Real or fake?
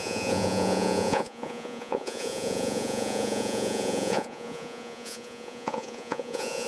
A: fake